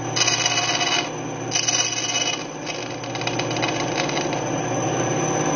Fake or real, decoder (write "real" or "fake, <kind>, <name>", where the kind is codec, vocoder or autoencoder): real